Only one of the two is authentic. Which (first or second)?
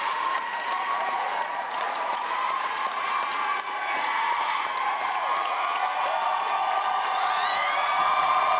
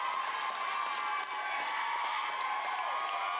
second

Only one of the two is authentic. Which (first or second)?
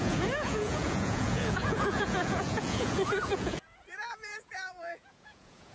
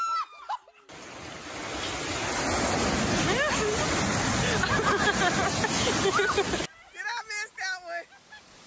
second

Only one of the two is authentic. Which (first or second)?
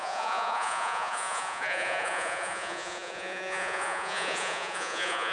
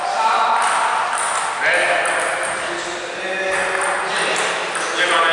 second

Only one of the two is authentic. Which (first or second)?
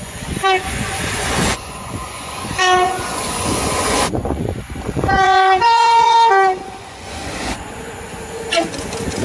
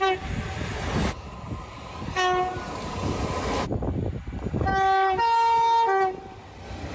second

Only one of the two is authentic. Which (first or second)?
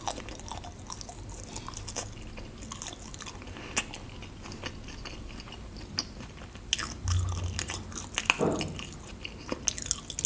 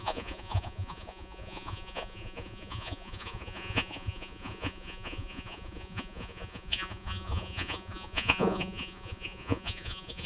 first